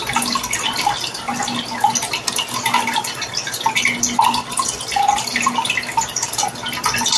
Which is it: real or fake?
real